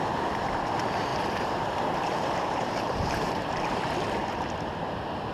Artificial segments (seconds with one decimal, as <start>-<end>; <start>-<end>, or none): 1.1-3.5